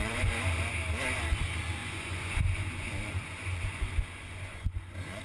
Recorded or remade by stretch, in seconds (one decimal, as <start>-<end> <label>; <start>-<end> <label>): 0.0-0.5 remade; 0.5-1.8 recorded; 1.8-5.2 remade